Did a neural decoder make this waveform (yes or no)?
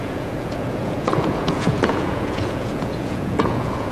yes